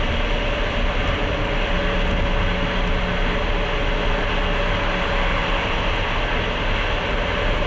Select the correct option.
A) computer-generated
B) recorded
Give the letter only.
B